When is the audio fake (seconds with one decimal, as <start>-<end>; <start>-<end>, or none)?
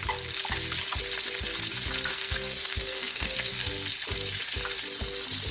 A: 2.1-3.7